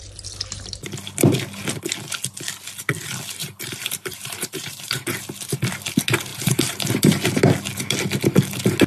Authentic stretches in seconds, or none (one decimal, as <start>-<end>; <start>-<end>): 0.0-3.4; 5.0-6.3; 6.9-8.9

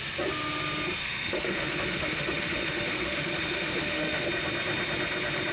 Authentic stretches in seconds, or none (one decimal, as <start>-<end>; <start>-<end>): 0.0-1.0; 4.3-5.5

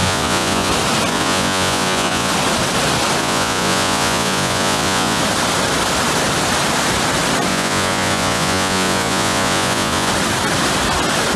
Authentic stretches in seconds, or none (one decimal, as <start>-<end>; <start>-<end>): 0.7-1.1; 2.3-3.2; 5.2-7.5; 10.1-11.4

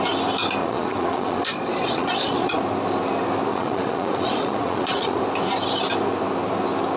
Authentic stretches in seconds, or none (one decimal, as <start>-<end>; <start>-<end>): 0.0-0.6; 2.6-3.5; 5.2-7.0

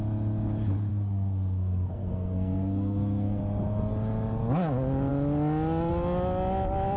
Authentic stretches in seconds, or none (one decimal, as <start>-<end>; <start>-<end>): 0.0-0.9; 3.4-7.0

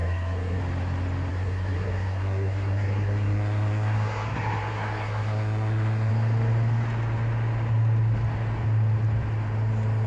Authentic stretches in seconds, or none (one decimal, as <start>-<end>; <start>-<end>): 0.6-1.3; 6.1-10.1

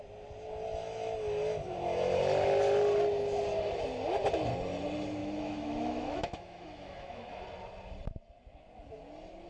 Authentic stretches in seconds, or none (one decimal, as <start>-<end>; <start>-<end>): 0.0-5.2; 7.4-9.5

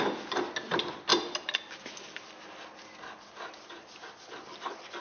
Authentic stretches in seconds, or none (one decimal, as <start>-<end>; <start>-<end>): 0.0-5.0